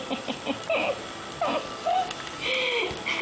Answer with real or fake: real